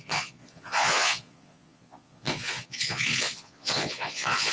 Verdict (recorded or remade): remade